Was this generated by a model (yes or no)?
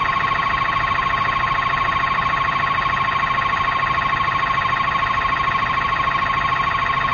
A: yes